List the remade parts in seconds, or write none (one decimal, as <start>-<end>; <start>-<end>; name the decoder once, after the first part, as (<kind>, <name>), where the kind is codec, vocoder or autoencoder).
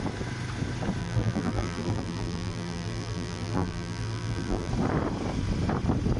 1.0-4.7 (vocoder, BigVGAN v2)